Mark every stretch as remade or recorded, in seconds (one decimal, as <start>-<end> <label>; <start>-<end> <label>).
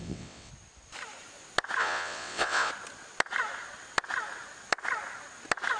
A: 0.0-0.5 remade; 0.5-1.8 recorded; 1.8-2.7 remade; 2.7-5.8 recorded